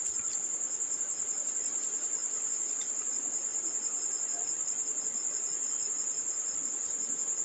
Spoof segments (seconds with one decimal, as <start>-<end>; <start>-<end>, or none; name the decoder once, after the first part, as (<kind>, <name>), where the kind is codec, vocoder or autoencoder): none